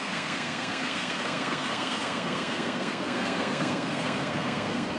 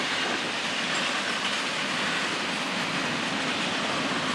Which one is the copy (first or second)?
first